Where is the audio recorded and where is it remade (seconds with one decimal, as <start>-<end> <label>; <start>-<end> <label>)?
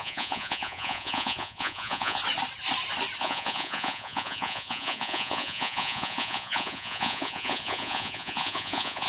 0.0-2.2 remade; 2.2-3.2 recorded; 3.2-9.1 remade